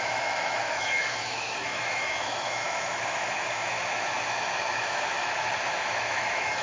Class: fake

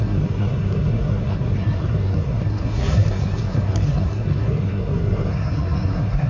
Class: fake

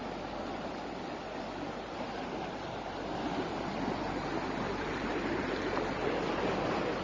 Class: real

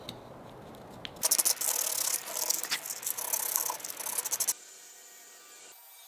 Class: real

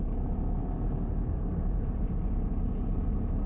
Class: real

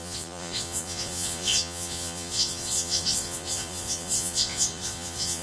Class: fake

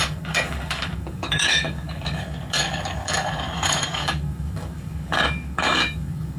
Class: fake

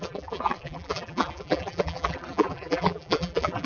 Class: fake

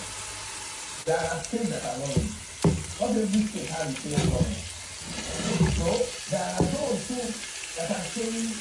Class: real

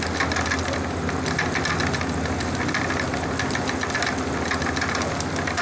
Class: real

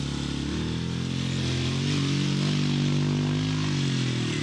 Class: real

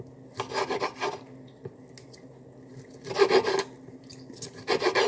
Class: real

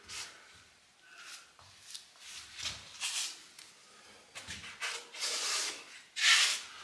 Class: real